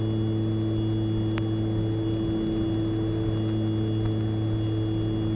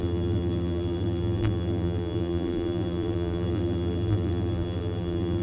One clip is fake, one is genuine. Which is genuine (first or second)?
first